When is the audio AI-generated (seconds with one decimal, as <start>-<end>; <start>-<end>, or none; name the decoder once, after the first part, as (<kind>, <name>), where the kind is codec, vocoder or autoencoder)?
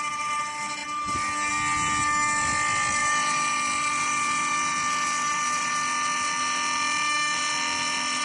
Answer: 0.8-1.5 (vocoder, BigVGAN v2); 3.0-5.7